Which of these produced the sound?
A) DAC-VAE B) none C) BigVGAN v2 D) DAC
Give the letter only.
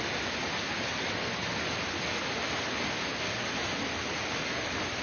B